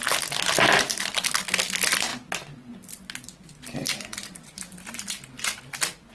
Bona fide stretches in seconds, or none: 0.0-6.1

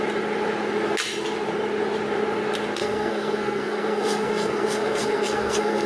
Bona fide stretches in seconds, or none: 0.0-2.8

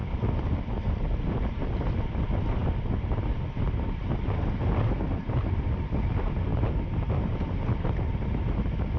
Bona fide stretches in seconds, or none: 0.0-9.0

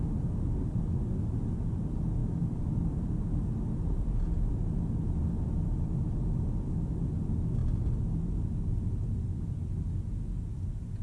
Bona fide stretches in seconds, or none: 0.0-11.0

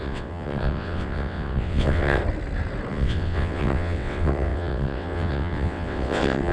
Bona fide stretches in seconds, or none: 2.2-2.9

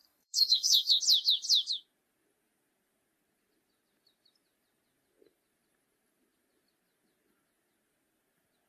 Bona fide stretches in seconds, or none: 1.0-8.7

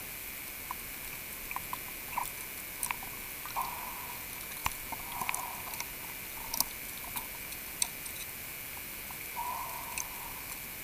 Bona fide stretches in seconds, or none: 0.0-10.8

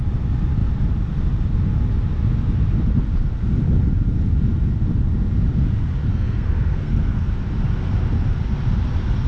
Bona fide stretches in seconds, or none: 0.0-6.1; 7.3-9.3